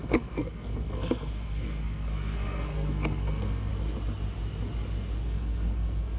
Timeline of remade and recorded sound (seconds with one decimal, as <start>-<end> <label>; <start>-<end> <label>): 0.0-3.7 remade; 3.7-5.2 recorded; 5.2-6.2 remade